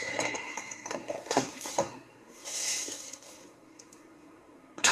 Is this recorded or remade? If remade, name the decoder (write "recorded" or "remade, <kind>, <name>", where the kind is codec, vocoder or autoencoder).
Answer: remade, codec, SNAC